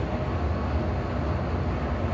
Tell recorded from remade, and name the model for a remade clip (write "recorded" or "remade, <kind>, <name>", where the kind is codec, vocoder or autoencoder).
recorded